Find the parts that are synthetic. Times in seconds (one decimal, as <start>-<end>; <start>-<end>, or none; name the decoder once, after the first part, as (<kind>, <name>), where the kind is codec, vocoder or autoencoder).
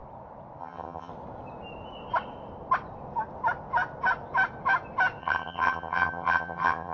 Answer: 0.6-1.1 (vocoder, HiFi-GAN); 5.2-6.9